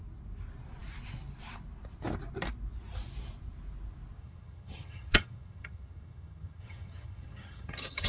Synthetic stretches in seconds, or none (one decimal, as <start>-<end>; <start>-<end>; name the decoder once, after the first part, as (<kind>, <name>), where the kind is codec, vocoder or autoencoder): 4.2-8.1 (vocoder, HiFi-GAN)